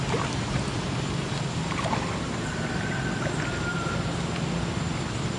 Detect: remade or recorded recorded